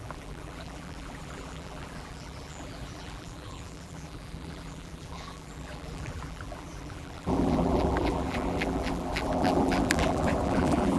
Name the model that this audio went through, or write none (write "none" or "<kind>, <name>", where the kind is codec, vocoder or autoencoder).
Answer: vocoder, BigVGAN v2